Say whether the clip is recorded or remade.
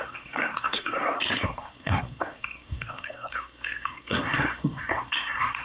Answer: remade